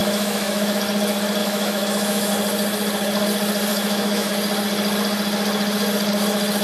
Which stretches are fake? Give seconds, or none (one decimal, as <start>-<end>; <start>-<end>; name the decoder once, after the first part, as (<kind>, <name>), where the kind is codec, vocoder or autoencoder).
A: 0.0-0.8 (autoencoder, DAC-VAE); 1.4-2.3; 3.7-4.3

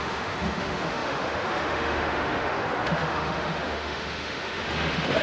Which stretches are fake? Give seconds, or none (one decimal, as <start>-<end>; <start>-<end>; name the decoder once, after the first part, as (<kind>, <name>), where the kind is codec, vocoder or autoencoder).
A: 0.0-5.2 (autoencoder, DAC-VAE)

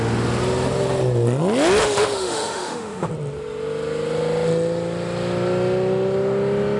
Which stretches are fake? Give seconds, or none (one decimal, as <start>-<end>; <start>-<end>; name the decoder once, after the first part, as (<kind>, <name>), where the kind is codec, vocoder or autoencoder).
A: 1.8-3.1 (autoencoder, DAC-VAE)